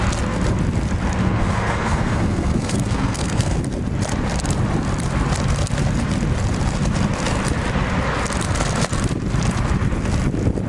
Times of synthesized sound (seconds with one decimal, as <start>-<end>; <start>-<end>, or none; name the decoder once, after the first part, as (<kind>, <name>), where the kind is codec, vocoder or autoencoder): 1.2-3.6 (codec, SNAC)